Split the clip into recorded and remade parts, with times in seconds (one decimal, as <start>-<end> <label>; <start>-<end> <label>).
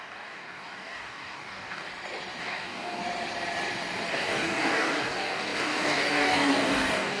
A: 0.0-1.9 remade; 1.9-2.4 recorded; 2.4-3.0 remade; 3.0-4.1 recorded; 4.1-7.2 remade